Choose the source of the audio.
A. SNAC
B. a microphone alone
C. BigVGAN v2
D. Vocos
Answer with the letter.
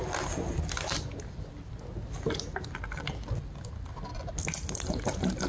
B